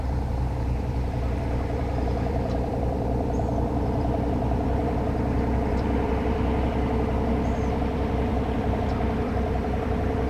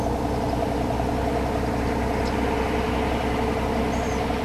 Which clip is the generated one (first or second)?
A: first